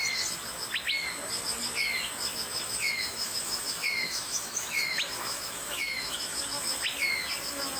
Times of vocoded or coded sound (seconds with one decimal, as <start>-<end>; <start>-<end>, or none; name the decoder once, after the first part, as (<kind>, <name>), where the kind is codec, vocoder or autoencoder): 2.5-6.4 (autoencoder, DAC-VAE)